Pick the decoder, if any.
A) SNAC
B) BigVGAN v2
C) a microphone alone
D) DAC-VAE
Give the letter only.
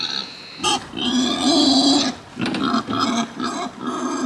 C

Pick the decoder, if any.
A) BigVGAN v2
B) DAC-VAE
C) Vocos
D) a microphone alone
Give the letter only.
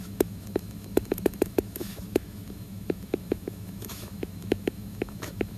B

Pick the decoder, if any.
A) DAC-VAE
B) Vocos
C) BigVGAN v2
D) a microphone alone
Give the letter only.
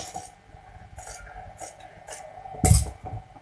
D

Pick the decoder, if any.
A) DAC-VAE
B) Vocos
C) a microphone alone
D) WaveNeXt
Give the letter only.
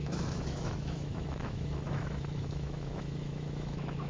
A